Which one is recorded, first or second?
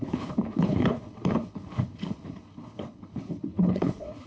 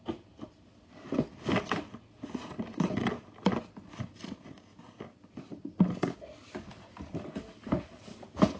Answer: second